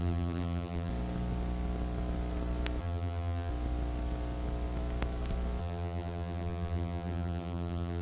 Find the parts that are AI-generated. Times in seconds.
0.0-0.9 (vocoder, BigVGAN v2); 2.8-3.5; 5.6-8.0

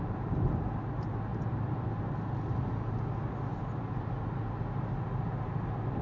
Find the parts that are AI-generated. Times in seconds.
1.3-1.9 (vocoder, BigVGAN v2); 3.5-4.1

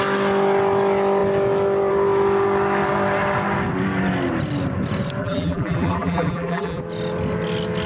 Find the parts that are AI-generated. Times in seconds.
5.2-6.8 (vocoder, BigVGAN v2)

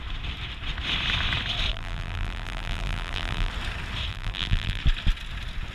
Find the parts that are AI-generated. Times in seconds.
1.7-3.5 (vocoder, BigVGAN v2); 4.1-4.8

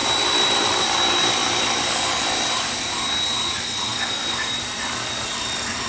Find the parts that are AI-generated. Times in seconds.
0.0-0.8 (vocoder, BigVGAN v2); 1.4-1.9